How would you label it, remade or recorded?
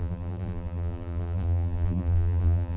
remade